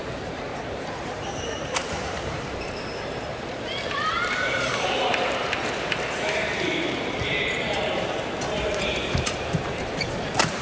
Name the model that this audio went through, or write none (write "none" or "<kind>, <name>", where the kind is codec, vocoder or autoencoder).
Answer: vocoder, BigVGAN v2